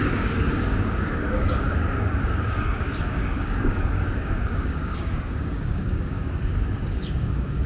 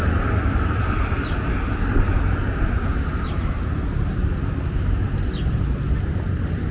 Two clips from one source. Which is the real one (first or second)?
second